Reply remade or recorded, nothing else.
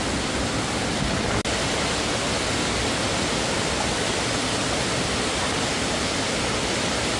recorded